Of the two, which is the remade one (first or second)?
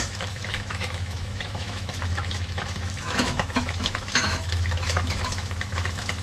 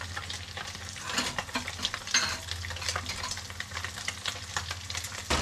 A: first